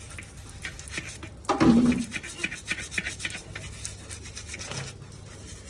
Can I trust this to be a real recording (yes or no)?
yes